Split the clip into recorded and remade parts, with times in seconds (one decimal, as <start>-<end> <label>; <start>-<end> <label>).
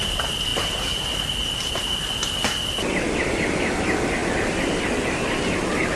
0.0-6.0 recorded